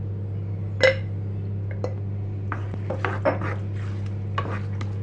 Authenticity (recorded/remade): recorded